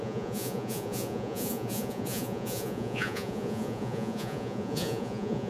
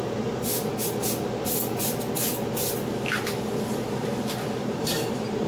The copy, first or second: first